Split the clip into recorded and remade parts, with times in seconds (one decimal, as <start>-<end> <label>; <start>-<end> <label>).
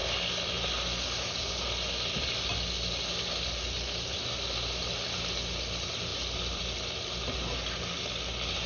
0.0-6.1 recorded; 6.1-6.6 remade; 6.6-8.7 recorded